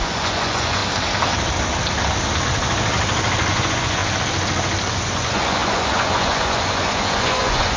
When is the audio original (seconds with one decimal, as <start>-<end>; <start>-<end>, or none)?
0.8-3.5; 4.0-4.9